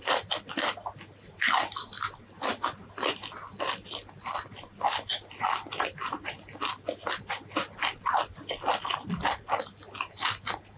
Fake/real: real